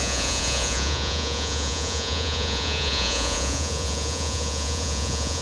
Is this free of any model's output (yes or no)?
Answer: no